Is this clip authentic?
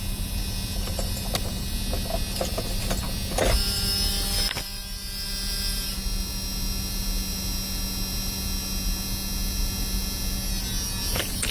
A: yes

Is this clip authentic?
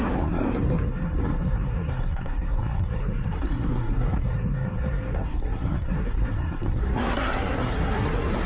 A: no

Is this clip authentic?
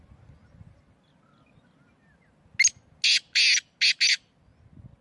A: yes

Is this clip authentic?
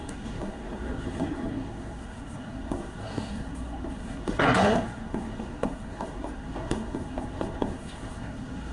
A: no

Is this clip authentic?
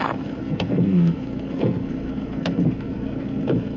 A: no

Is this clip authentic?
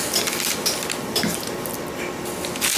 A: yes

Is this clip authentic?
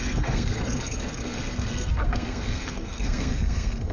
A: no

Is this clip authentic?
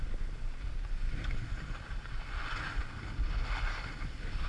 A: yes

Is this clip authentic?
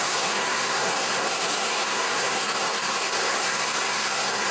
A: no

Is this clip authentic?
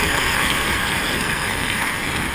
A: no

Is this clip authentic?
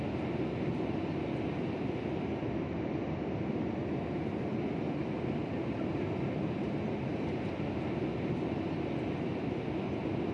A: yes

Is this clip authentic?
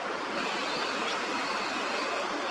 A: yes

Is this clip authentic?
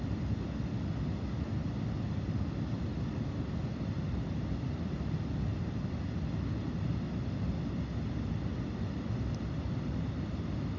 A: yes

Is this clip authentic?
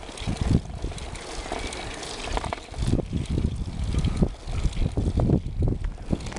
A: yes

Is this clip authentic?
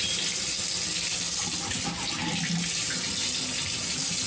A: yes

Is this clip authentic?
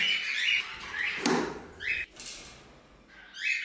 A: yes